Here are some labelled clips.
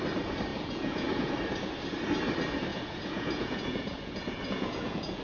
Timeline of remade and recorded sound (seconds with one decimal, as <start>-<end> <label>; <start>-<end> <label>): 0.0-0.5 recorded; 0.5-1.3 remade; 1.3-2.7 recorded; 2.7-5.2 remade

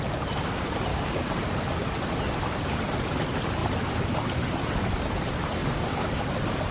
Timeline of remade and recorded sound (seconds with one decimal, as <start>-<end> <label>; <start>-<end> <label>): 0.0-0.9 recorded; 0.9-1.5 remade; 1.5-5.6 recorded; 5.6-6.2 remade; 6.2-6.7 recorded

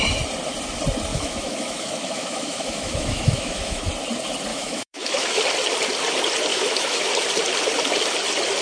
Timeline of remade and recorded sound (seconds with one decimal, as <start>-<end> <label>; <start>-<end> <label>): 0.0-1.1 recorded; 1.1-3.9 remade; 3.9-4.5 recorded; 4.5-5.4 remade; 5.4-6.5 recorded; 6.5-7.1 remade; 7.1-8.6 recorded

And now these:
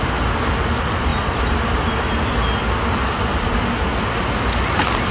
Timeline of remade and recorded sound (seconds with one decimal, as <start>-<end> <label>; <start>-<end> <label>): 0.0-5.1 recorded

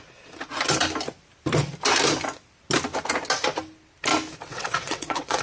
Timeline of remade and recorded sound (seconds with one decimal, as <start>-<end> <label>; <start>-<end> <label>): 0.0-4.5 recorded; 4.5-5.4 remade